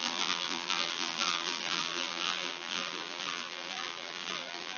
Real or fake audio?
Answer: fake